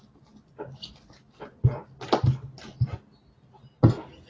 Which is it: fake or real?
real